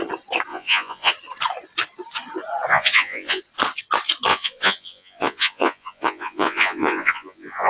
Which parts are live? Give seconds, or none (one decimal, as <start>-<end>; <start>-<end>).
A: 0.0-0.5; 1.1-2.7; 3.4-4.3